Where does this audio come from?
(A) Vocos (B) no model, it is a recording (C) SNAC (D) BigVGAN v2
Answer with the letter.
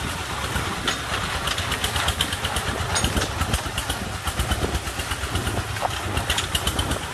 B